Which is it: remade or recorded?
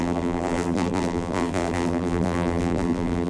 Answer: remade